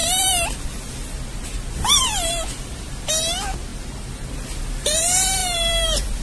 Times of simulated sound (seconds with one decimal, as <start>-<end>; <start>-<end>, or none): 0.0-3.1; 5.4-6.2